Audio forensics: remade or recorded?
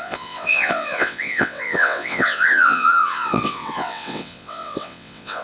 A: remade